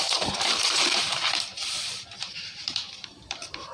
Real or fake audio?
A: fake